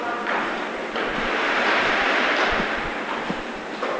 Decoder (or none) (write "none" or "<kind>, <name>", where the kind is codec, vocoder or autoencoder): vocoder, BigVGAN v2